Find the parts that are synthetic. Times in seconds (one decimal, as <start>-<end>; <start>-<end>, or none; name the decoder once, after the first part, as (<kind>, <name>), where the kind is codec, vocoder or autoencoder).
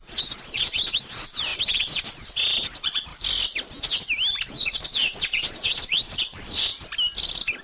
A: 0.0-3.1 (vocoder, Vocos); 4.5-6.7